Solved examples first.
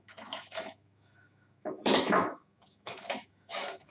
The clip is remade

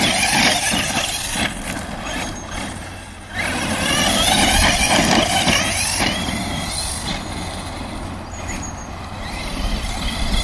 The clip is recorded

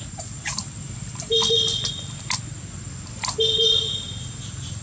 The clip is recorded